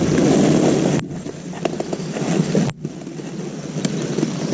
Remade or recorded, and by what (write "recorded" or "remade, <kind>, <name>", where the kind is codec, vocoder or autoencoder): recorded